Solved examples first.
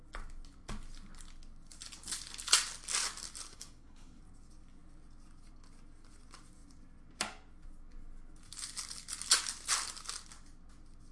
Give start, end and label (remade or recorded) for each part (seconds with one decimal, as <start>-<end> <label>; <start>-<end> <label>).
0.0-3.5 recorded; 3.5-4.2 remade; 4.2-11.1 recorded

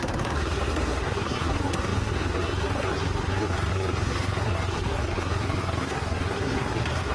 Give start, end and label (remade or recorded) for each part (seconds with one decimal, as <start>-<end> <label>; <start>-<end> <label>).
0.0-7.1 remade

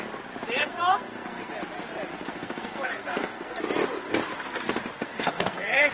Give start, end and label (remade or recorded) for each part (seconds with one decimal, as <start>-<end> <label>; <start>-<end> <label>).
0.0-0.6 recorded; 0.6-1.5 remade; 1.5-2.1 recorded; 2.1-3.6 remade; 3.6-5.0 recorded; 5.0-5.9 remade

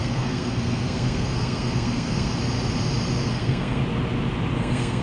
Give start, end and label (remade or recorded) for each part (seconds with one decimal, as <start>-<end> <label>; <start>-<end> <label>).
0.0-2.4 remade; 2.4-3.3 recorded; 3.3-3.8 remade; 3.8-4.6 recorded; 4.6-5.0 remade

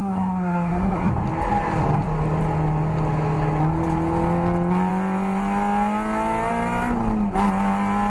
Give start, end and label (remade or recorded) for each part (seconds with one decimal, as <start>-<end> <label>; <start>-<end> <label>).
0.0-1.1 remade; 1.1-8.1 recorded

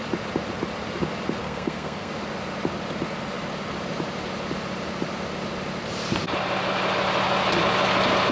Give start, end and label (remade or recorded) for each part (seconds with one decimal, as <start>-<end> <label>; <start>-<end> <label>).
0.0-1.4 recorded; 1.4-2.1 remade; 2.1-8.3 recorded

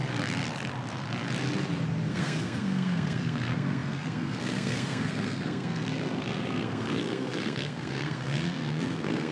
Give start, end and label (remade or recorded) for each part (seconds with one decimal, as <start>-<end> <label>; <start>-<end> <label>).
0.0-2.1 recorded; 2.1-9.3 remade

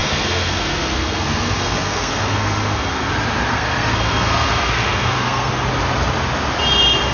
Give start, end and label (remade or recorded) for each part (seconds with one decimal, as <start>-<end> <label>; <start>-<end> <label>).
0.0-3.1 remade; 3.1-3.5 recorded; 3.5-5.6 remade; 5.6-7.1 recorded